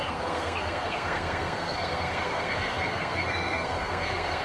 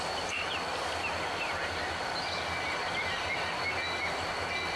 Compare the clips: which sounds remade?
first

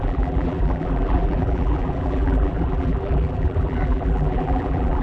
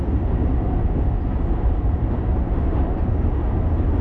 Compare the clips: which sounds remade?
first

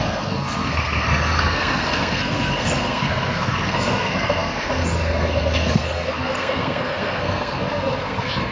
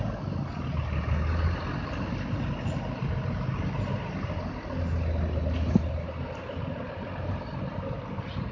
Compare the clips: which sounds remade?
first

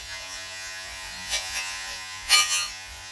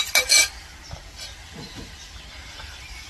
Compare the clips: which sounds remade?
first